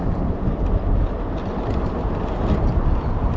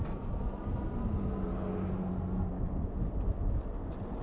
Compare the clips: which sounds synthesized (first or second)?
first